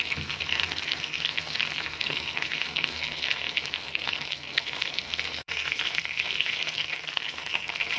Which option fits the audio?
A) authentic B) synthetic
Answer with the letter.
B